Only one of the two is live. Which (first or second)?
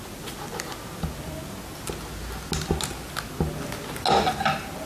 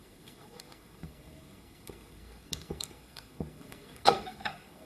first